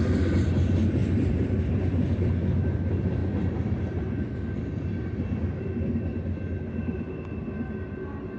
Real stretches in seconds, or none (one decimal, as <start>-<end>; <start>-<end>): 0.0-1.0; 1.6-8.4